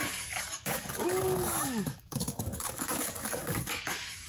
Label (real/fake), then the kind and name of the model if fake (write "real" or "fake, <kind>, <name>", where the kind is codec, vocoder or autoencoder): fake, codec, DAC